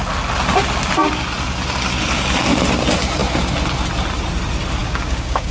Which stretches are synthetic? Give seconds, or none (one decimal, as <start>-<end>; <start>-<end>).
4.8-5.5